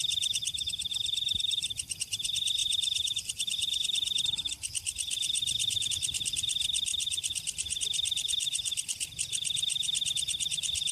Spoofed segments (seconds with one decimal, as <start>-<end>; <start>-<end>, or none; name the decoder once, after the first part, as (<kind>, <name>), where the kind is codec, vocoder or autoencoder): 0.9-2.0 (vocoder, BigVGAN v2); 2.6-5.9; 6.9-7.8